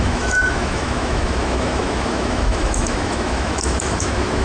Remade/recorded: remade